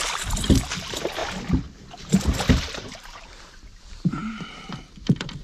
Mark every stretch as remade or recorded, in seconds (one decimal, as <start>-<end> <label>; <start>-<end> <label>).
0.0-2.8 recorded; 2.8-3.3 remade; 3.3-3.7 recorded; 3.7-4.9 remade; 4.9-5.4 recorded